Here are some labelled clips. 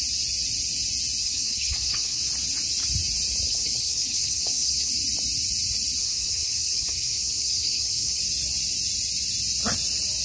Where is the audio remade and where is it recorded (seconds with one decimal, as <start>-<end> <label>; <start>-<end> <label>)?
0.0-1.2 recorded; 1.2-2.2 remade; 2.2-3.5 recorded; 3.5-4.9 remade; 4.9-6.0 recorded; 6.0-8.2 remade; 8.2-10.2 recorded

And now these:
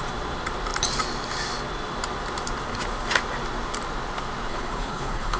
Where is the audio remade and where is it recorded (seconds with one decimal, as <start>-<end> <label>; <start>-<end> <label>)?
0.0-4.5 recorded; 4.5-5.4 remade

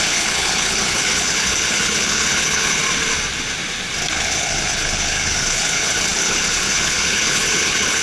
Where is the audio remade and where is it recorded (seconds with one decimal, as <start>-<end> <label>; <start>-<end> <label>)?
0.0-2.8 remade; 2.8-4.1 recorded; 4.1-8.0 remade

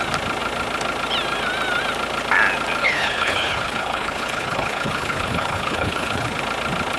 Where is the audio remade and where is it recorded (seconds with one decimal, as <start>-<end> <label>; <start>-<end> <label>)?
0.0-2.8 recorded; 2.8-6.4 remade; 6.4-7.0 recorded

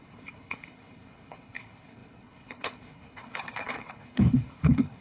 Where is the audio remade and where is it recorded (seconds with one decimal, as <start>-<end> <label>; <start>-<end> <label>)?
0.0-5.0 remade